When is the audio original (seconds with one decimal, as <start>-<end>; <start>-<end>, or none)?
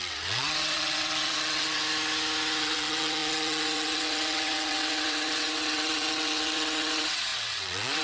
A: 1.8-2.6